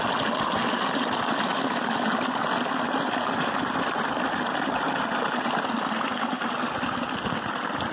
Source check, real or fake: real